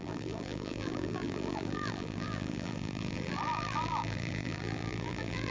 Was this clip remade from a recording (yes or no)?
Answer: yes